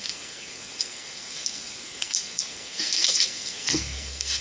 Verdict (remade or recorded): remade